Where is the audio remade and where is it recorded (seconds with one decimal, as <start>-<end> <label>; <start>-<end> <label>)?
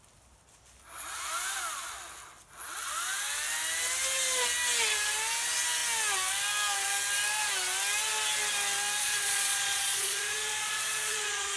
0.0-9.0 recorded; 9.0-11.6 remade